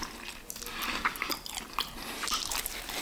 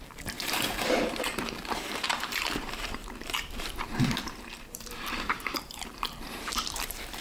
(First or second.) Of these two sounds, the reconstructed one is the second